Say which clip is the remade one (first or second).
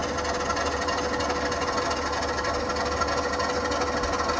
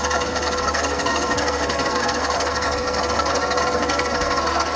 second